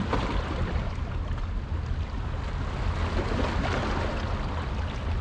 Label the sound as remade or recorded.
recorded